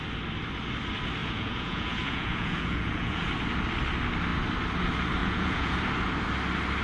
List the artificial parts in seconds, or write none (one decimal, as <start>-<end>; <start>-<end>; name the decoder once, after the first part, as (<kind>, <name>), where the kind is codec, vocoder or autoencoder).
1.2-3.3 (vocoder, Vocos); 5.2-5.8